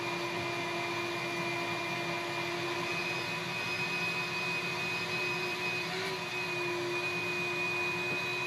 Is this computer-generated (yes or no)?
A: no